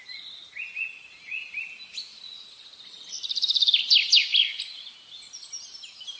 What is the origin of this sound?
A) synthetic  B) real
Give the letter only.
B